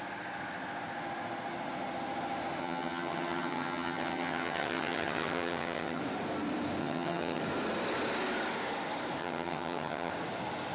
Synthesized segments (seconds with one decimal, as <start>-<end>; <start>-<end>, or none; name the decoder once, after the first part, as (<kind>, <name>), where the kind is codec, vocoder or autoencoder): 2.6-6.0 (vocoder, HiFi-GAN); 6.8-7.4; 9.2-10.1

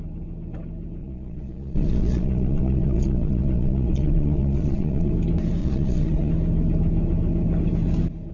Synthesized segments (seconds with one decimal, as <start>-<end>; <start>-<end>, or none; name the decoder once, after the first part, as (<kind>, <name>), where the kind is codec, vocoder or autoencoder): 1.0-5.1 (vocoder, Vocos); 5.6-6.3